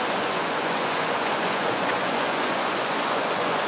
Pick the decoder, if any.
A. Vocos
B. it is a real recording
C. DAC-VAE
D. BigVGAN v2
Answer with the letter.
A